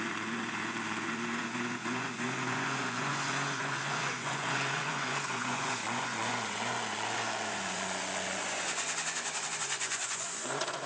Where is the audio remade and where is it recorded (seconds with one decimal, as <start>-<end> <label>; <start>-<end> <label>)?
0.0-10.9 remade